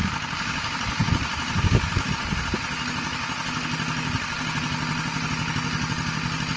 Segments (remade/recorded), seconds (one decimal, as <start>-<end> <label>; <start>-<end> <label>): 0.0-2.1 remade; 2.1-6.6 recorded